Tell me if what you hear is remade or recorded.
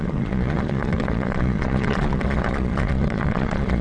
remade